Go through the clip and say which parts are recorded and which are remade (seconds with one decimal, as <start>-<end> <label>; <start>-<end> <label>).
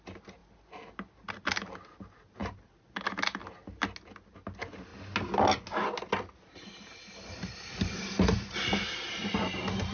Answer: 0.0-9.9 recorded